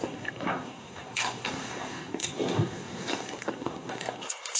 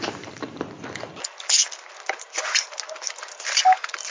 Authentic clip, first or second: second